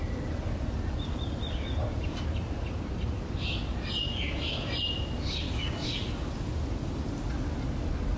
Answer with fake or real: real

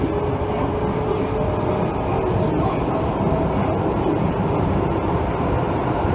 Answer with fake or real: real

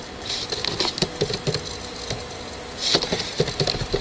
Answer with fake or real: real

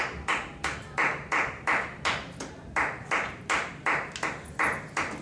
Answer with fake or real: real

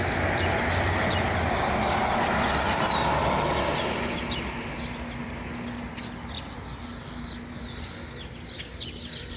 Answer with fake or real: real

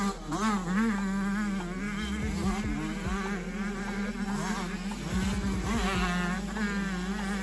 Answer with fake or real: real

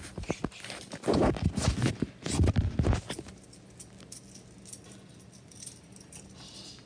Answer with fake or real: real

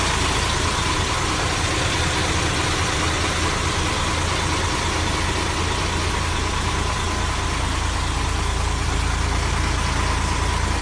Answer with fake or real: real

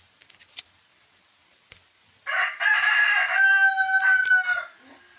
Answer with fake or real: real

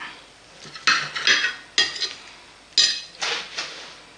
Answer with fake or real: real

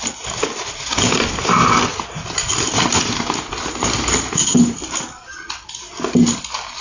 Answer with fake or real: real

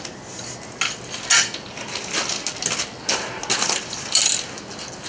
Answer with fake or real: real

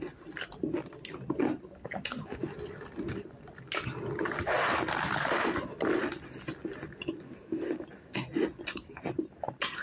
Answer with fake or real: real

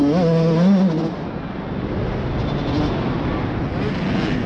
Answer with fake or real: real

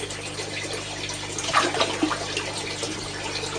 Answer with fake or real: real